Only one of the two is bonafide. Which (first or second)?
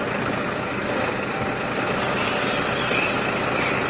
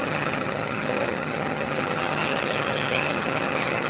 first